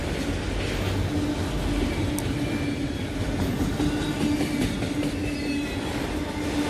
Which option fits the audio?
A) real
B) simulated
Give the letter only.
A